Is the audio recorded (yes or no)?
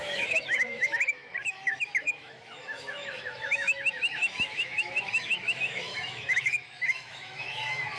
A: no